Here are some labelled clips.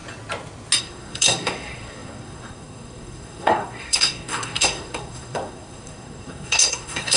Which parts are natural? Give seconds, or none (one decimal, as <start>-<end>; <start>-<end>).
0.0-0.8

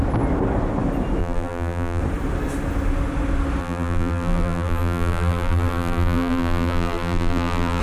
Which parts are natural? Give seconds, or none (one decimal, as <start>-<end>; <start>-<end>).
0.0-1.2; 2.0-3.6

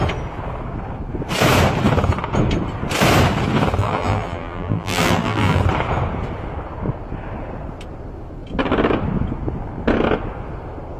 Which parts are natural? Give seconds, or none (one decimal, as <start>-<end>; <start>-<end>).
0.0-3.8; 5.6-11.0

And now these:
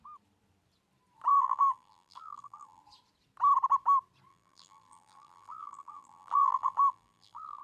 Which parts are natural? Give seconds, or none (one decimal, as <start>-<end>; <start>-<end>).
0.0-1.3; 2.8-4.3

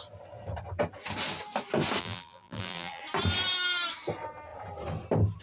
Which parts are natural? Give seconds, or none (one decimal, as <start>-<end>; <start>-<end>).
0.0-2.0; 3.0-5.4

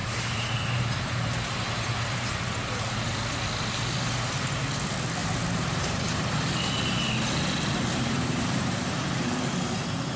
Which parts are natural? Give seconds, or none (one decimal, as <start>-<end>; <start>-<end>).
1.6-5.2; 6.5-7.9; 9.3-10.2

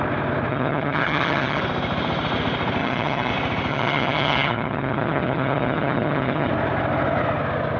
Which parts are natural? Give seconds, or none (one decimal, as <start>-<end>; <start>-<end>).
0.0-0.5; 1.6-2.8; 3.3-3.7; 6.5-7.8

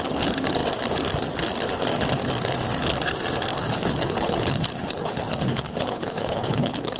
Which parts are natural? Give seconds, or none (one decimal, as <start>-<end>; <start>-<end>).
0.0-3.5